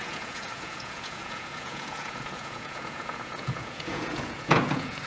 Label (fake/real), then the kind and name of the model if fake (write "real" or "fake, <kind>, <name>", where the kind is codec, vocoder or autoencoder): fake, vocoder, Vocos